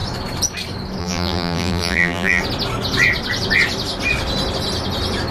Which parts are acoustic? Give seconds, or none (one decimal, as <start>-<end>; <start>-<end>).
0.0-1.0; 2.4-5.3